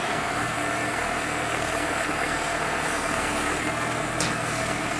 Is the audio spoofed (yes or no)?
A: yes